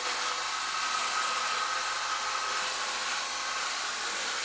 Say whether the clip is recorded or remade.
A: recorded